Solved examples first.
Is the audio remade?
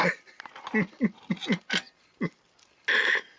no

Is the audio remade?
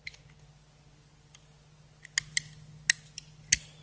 no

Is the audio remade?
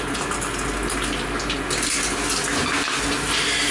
no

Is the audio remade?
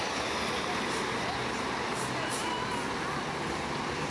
no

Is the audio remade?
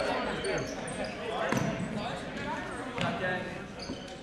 no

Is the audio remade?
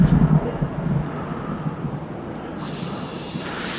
no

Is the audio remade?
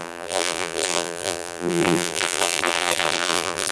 yes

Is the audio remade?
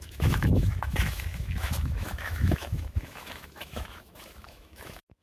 yes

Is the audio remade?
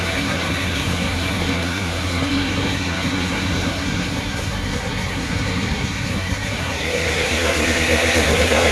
yes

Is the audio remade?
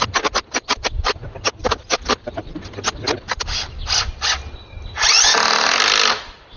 no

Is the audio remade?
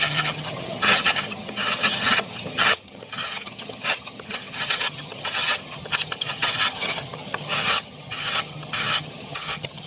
yes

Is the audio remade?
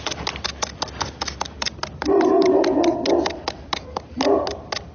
no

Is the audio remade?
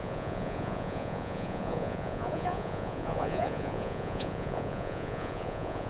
yes